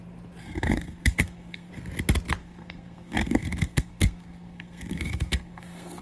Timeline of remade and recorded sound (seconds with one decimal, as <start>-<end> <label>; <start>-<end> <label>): 0.0-0.4 recorded; 0.4-1.7 remade; 1.7-2.4 recorded; 2.4-6.0 remade